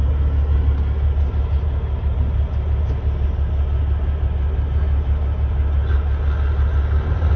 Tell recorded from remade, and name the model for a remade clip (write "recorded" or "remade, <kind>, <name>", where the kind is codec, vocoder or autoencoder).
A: recorded